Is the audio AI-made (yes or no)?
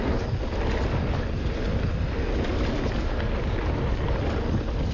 no